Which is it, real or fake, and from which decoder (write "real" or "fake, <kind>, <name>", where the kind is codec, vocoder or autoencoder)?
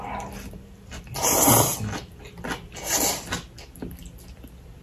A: real